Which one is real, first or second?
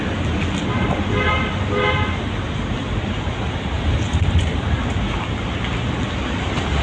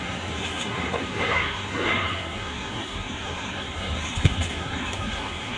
first